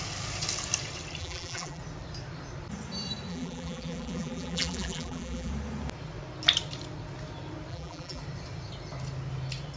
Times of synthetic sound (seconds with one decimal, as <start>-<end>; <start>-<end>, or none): 1.2-1.8; 3.3-5.5; 7.7-8.2